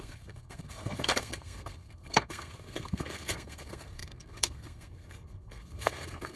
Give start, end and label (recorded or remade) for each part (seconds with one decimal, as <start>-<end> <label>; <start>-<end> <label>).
0.0-6.4 remade